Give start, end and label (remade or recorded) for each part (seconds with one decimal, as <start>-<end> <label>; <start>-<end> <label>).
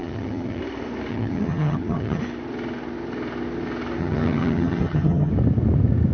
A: 0.0-0.6 remade; 0.6-1.1 recorded; 1.1-2.2 remade; 2.2-4.0 recorded; 4.0-5.3 remade; 5.3-6.1 recorded